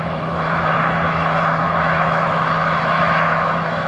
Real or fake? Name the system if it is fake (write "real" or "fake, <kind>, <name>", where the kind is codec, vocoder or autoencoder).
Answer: fake, autoencoder, DAC-VAE